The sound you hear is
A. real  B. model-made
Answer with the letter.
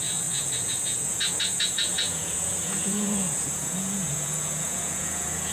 B